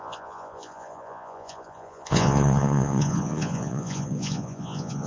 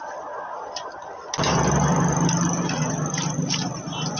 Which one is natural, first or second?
second